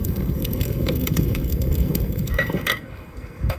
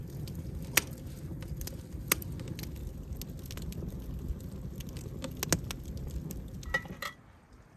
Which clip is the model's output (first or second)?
first